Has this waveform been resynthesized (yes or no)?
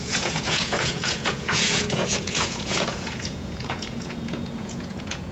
yes